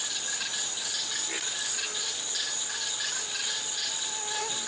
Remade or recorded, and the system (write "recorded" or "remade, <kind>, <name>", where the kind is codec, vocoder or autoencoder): recorded